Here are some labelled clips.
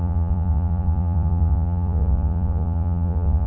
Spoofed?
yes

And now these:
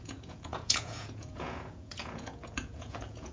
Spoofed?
yes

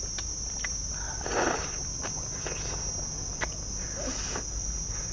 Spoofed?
no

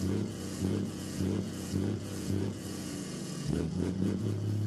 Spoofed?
yes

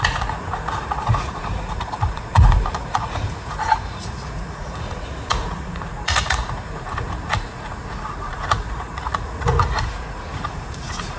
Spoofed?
yes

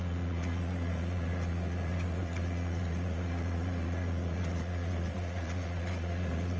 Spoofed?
yes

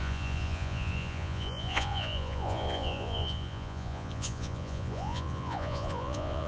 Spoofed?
yes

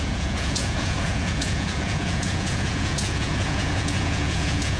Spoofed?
yes